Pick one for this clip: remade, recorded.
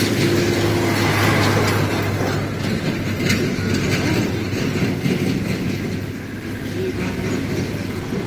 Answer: recorded